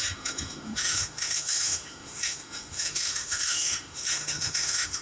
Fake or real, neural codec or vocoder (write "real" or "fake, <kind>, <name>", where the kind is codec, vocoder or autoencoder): fake, autoencoder, DAC-VAE